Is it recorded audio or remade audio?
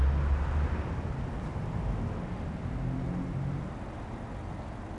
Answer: recorded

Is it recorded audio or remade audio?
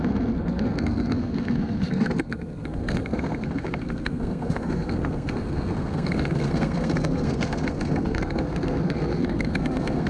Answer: remade